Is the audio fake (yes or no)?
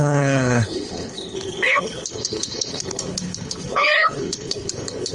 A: yes